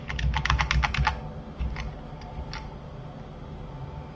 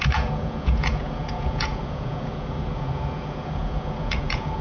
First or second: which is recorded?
first